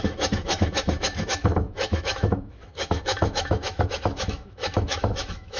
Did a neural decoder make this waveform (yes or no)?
yes